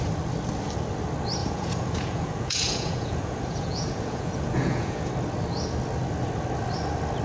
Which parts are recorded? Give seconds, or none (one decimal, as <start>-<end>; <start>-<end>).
0.0-1.4; 5.1-7.2

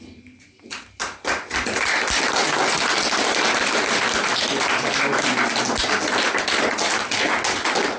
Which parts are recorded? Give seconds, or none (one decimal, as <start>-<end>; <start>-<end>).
0.0-8.0

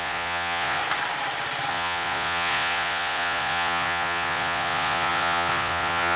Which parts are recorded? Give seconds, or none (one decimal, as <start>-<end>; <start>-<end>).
0.8-1.7

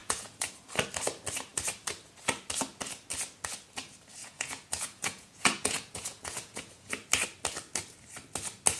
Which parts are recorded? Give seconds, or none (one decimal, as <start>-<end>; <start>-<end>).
0.5-4.2; 6.9-8.8

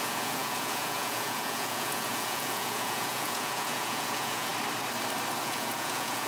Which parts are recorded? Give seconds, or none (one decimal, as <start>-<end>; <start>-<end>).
4.5-5.4

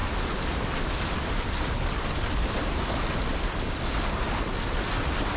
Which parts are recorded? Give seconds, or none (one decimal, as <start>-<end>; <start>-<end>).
0.0-5.4

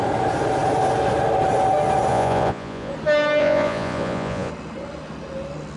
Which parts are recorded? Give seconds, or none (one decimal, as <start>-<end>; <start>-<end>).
0.0-2.1; 2.9-3.4; 4.5-5.8